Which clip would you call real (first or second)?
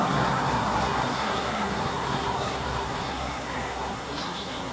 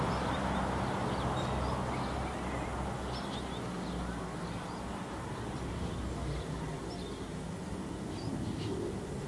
second